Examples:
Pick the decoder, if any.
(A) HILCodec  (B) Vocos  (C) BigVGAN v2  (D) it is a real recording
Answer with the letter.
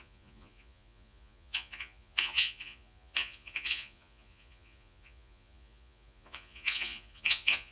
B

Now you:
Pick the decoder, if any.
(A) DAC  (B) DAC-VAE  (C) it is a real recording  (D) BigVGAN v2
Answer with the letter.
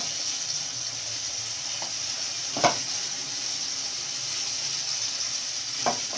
C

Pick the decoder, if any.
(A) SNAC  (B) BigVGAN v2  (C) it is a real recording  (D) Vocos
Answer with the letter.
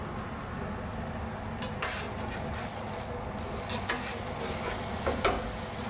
C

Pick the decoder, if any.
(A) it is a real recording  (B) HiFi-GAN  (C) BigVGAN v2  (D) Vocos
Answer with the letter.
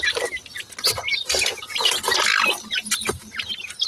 A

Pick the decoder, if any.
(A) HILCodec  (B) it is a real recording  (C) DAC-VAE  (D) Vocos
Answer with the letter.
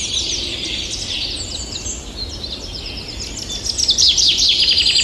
B